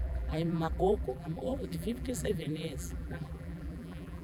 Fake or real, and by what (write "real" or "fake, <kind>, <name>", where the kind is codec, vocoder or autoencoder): fake, vocoder, BigVGAN v2